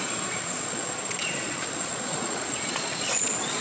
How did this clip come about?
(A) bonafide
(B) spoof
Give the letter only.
B